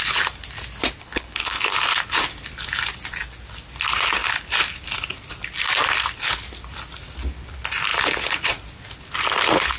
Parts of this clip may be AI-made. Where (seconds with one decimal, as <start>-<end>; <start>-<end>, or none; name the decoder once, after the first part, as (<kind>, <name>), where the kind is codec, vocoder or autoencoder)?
1.0-1.7 (codec, HILCodec)

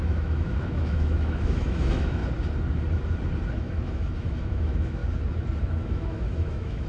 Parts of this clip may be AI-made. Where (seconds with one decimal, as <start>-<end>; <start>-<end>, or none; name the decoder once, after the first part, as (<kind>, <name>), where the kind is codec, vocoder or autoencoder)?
0.0-2.2 (autoencoder, DAC-VAE); 3.5-5.0; 5.6-6.9

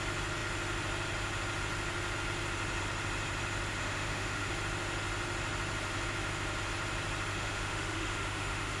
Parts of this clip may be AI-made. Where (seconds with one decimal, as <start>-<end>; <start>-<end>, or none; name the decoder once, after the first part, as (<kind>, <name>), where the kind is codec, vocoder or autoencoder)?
3.8-4.5 (autoencoder, DAC-VAE); 7.3-8.8

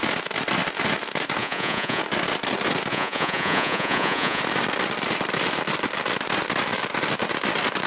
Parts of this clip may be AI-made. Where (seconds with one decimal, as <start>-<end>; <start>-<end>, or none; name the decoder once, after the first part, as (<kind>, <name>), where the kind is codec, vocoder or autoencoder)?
1.4-2.0 (vocoder, Vocos); 2.9-4.4

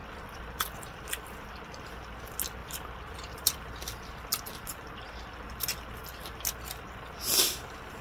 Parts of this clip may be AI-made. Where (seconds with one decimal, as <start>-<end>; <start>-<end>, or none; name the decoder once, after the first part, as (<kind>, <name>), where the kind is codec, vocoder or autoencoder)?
0.0-1.2 (vocoder, BigVGAN v2); 2.6-3.8

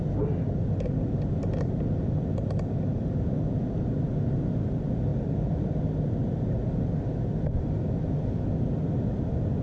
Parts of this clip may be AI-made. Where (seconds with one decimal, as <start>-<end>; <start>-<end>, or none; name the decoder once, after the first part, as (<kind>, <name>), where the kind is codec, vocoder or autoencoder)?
none

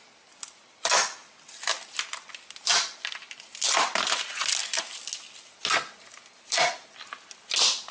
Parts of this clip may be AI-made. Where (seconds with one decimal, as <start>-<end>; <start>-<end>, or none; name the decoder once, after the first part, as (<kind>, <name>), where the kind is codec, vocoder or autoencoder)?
none